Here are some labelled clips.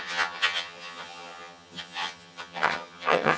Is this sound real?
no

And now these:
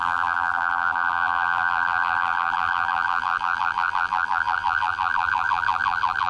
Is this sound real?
no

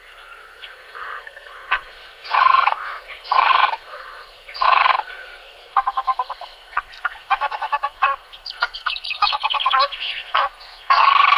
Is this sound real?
no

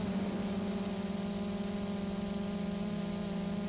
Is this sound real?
yes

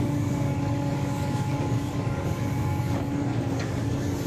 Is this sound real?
no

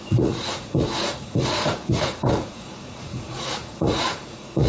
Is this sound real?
no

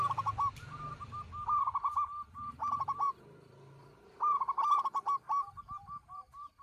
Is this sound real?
no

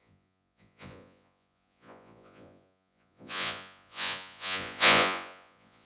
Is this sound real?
no